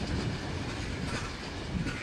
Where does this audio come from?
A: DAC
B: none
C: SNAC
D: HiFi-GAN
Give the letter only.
B